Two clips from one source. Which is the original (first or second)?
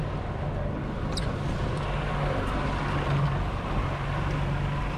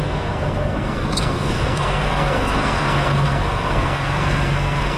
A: first